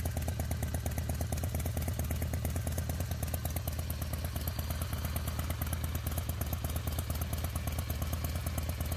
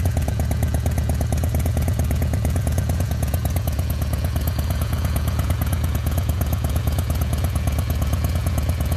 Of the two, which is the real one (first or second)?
first